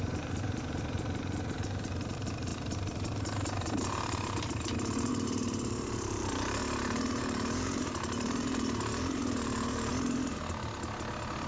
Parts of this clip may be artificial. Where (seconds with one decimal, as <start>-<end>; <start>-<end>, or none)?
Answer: 0.0-6.6; 7.2-9.9